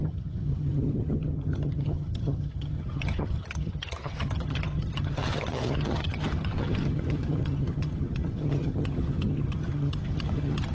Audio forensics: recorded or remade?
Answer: remade